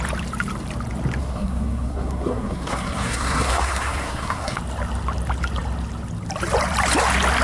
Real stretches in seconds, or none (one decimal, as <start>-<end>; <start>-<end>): 0.0-1.2; 4.6-7.4